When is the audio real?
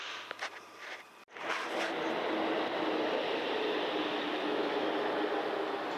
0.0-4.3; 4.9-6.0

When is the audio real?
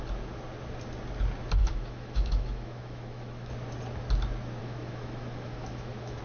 0.0-1.6; 3.5-4.6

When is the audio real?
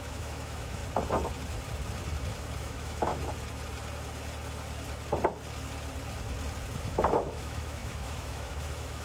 0.8-2.6; 3.1-6.9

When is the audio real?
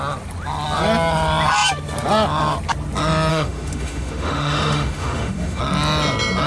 0.0-3.3; 5.6-6.5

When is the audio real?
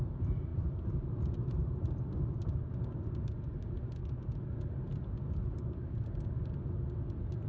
0.0-7.5